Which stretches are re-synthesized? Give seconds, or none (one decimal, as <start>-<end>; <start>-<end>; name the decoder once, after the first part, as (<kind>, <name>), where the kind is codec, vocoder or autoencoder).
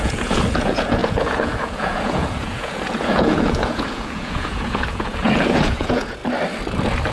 0.0-6.2 (vocoder, Vocos)